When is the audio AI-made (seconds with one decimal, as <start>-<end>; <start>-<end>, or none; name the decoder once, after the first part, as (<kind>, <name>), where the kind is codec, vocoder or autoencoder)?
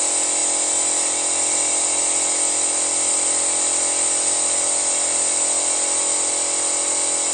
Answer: none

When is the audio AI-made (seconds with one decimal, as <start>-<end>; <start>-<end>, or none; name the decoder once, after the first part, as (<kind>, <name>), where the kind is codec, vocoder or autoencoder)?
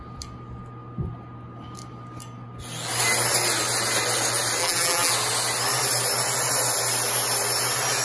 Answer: 4.6-5.1 (vocoder, BigVGAN v2)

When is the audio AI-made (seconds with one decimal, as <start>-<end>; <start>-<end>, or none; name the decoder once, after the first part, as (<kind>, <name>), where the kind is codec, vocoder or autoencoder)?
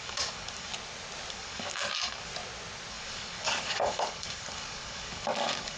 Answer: 0.0-0.7 (codec, DAC); 1.3-2.3; 2.9-5.8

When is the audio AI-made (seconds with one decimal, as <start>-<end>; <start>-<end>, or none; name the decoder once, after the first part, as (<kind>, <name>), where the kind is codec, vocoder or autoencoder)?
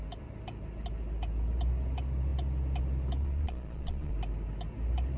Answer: 3.2-4.1 (vocoder, Vocos)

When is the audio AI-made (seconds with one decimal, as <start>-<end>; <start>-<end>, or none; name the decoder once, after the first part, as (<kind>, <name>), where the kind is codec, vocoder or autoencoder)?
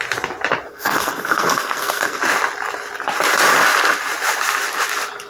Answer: 0.7-2.2 (codec, SNAC)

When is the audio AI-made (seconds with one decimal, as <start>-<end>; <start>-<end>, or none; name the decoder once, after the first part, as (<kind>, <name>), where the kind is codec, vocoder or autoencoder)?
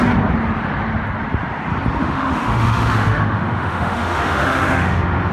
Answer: 2.0-5.3 (autoencoder, DAC-VAE)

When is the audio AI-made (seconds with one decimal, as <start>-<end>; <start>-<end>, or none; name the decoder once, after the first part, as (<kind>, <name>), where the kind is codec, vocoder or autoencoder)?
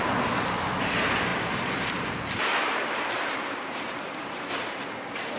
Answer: 1.3-4.5 (vocoder, BigVGAN v2)